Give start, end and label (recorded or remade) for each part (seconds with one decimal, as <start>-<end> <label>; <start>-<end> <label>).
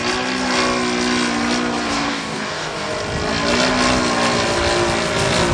0.0-1.8 recorded; 1.8-2.9 remade; 2.9-5.5 recorded